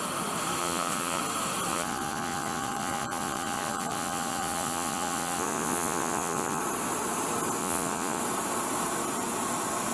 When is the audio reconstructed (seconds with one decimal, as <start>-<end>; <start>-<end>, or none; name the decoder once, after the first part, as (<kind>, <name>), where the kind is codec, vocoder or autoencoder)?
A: 0.6-1.2 (vocoder, Vocos); 1.7-6.6; 7.6-8.2